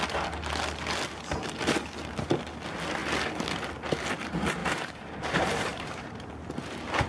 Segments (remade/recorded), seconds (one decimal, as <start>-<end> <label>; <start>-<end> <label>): 0.0-4.6 recorded; 4.6-6.1 remade; 6.1-7.1 recorded